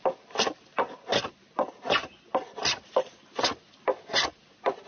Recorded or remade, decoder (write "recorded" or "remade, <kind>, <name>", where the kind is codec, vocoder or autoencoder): recorded